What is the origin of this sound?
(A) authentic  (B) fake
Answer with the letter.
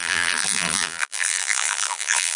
B